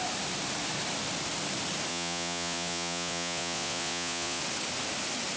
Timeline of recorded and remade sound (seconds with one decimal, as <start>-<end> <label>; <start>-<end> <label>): 0.0-1.9 recorded; 1.9-4.4 remade; 4.4-5.4 recorded